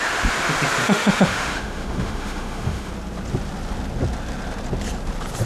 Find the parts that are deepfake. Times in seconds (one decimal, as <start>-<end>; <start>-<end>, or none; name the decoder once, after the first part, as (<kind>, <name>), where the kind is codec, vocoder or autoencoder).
0.8-2.9 (autoencoder, DAC-VAE)